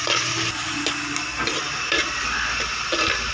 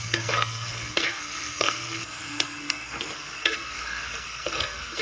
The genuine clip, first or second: first